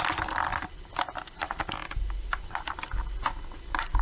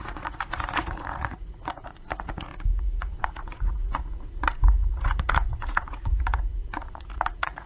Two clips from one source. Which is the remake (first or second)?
second